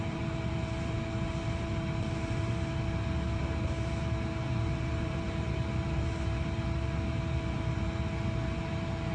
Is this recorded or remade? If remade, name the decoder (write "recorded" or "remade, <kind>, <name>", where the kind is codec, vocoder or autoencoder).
remade, vocoder, BigVGAN v2